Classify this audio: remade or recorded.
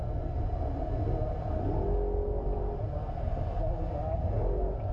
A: recorded